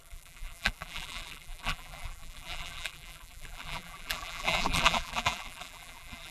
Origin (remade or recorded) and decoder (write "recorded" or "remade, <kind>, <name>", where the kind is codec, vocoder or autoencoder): remade, vocoder, BigVGAN v2